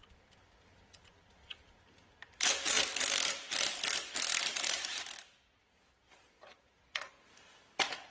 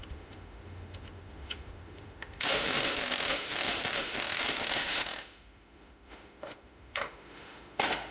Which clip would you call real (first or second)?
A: first